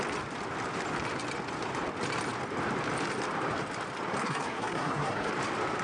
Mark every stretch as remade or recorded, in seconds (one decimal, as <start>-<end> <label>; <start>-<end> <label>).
0.0-4.2 recorded; 4.2-5.3 remade; 5.3-5.8 recorded